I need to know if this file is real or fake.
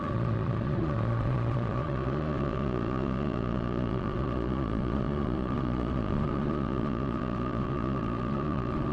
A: fake